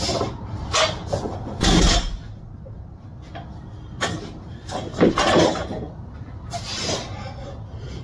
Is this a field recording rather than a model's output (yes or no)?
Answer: yes